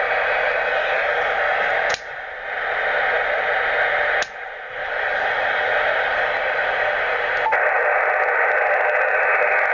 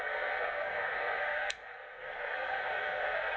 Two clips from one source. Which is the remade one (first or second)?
second